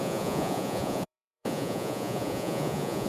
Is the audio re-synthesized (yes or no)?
yes